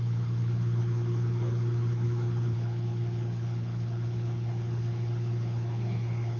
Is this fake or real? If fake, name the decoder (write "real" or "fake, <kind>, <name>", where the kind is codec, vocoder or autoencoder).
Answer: fake, codec, HILCodec